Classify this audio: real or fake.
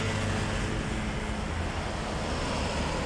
real